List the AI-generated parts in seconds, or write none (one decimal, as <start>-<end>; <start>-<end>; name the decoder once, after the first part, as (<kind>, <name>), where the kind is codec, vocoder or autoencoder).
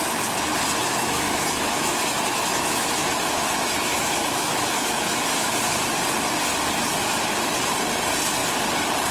0.8-5.6 (autoencoder, DAC-VAE)